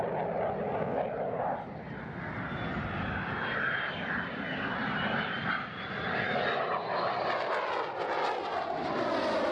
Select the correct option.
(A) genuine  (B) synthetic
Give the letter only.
A